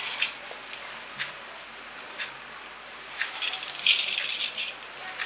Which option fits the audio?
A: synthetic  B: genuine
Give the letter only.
B